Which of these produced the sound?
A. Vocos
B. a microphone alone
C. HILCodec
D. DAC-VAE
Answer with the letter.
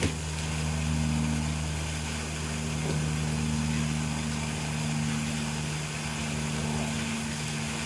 B